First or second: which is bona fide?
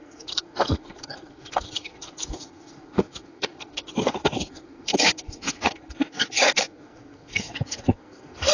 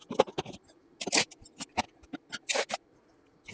second